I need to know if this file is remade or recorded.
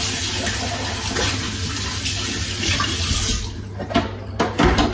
recorded